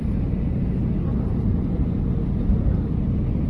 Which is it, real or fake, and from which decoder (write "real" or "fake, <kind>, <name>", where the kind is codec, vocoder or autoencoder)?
fake, vocoder, BigVGAN v2